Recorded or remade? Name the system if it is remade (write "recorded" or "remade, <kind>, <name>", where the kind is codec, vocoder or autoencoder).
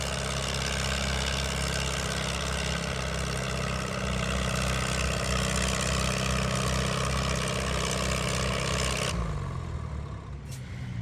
recorded